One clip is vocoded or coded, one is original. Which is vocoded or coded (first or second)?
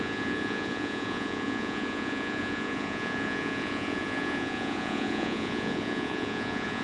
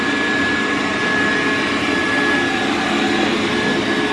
first